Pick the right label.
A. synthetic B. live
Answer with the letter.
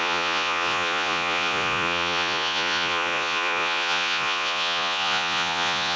A